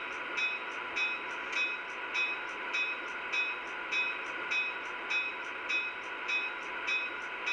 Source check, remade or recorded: recorded